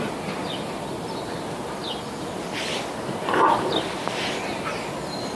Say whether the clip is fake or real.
real